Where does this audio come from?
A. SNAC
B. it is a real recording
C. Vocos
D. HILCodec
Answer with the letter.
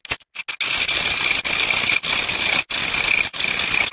B